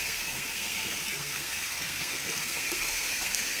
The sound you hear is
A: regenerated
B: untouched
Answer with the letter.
A